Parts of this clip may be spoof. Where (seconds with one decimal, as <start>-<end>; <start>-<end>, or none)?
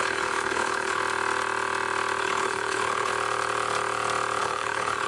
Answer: 0.0-1.0; 2.2-3.1; 4.4-5.1